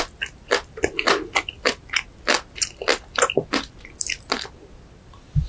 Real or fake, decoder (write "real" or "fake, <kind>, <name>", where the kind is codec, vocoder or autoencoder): real